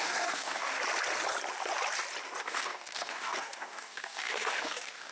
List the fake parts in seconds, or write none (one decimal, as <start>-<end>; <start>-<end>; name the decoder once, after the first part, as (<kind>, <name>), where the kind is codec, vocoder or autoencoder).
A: 0.0-0.8 (codec, DAC); 2.4-5.1